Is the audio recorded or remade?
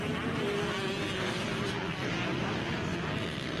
recorded